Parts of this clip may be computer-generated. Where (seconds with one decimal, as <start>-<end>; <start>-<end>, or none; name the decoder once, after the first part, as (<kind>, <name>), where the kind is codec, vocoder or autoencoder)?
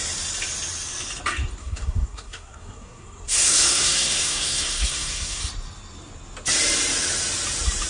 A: 1.6-5.4 (codec, SNAC)